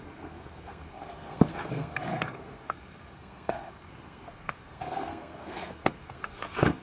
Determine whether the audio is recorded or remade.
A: remade